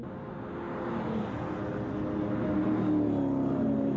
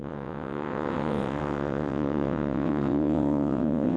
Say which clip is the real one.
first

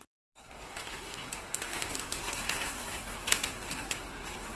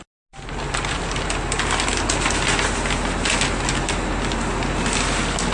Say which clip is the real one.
second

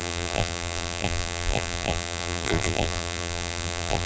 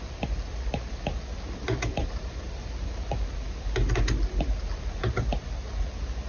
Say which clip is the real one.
second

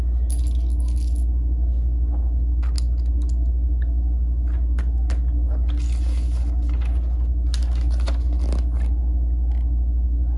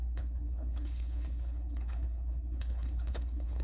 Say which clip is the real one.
first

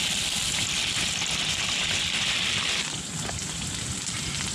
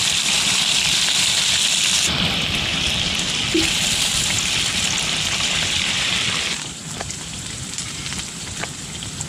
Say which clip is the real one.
first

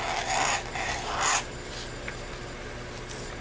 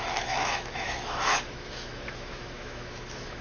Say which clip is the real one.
first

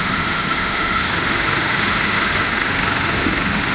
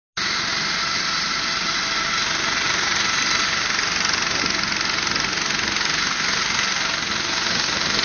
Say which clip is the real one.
second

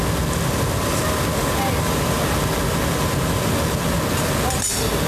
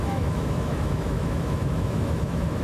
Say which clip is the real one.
first